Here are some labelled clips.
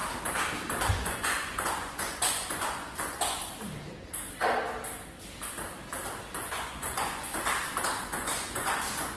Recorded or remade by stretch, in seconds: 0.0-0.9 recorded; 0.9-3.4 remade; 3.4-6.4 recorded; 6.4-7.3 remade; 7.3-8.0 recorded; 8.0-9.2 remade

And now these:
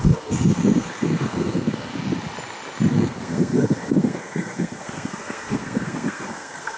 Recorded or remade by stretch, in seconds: 0.0-1.9 remade; 1.9-2.9 recorded; 2.9-6.8 remade

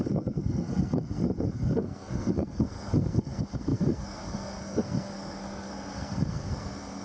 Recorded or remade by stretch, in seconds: 0.0-7.0 remade